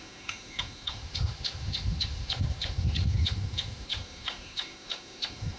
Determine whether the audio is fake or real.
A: fake